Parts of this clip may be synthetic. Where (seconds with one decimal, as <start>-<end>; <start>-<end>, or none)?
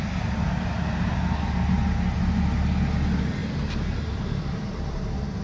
3.4-5.4